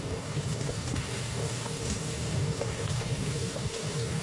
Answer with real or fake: fake